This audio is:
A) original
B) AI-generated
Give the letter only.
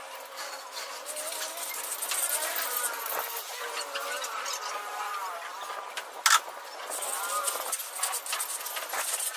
A